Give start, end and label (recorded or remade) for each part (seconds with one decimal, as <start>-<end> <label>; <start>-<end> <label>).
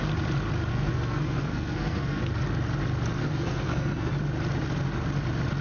0.0-0.7 recorded; 0.7-2.2 remade; 2.2-3.2 recorded; 3.2-4.1 remade; 4.1-5.6 recorded